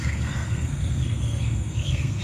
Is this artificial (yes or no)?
yes